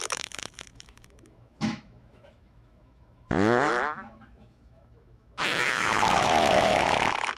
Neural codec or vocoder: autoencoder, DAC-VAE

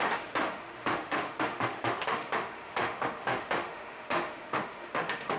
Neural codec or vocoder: autoencoder, DAC-VAE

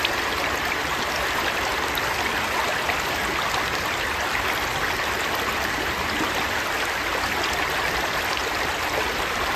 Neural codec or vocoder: none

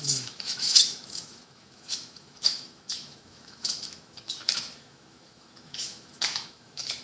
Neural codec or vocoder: autoencoder, DAC-VAE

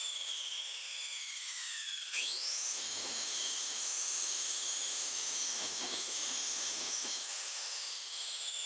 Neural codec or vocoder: autoencoder, DAC-VAE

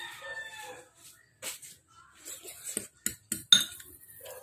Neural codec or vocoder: none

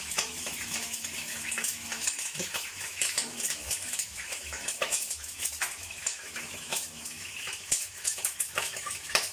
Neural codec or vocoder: autoencoder, DAC-VAE